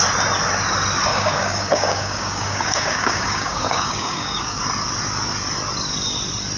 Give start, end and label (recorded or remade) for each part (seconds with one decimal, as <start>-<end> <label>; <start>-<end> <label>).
0.0-1.1 recorded; 1.1-4.6 remade; 4.6-6.6 recorded